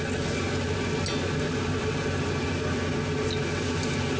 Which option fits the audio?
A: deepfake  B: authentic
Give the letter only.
B